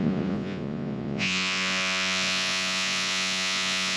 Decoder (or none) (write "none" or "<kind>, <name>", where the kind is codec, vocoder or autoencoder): vocoder, Vocos